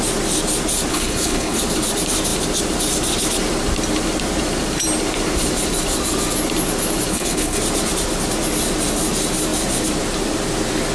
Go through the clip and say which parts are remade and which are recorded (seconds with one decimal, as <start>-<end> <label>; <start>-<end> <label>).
0.0-0.9 recorded; 0.9-1.6 remade; 1.6-7.1 recorded; 7.1-7.6 remade; 7.6-10.9 recorded